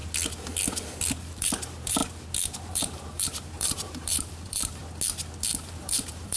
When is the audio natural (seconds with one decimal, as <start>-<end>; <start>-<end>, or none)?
0.0-1.3; 2.0-2.7; 4.8-5.5